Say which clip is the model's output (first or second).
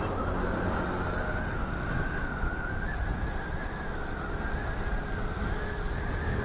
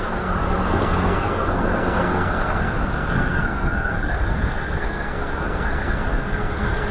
second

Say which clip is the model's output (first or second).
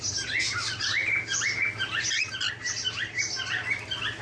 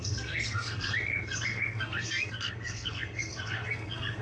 second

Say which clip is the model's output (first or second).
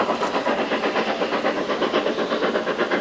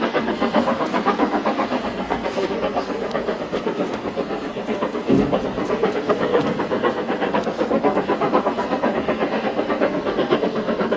second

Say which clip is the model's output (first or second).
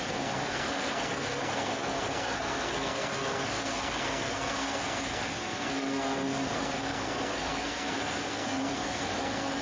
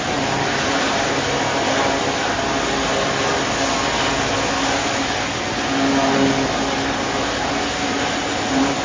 first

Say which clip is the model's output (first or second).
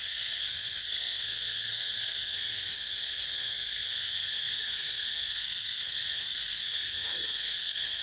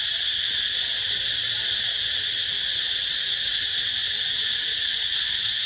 first